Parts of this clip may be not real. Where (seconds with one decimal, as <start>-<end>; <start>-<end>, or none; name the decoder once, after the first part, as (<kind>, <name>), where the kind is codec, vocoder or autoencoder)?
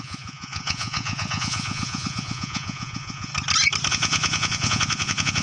0.0-3.3 (vocoder, Vocos); 3.9-5.4